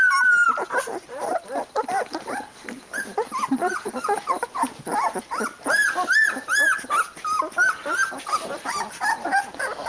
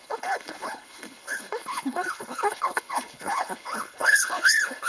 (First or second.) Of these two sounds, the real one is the first